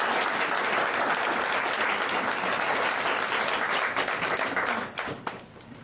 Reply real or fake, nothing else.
real